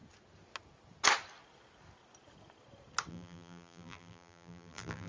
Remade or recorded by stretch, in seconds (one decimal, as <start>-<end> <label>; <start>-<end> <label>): 0.0-3.1 recorded; 3.1-5.1 remade